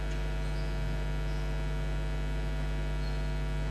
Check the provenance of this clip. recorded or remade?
recorded